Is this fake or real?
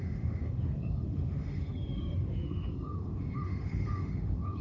fake